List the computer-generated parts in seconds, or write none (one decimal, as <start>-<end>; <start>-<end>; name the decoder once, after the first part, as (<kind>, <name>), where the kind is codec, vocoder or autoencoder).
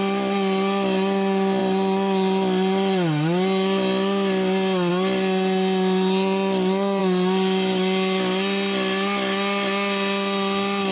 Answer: none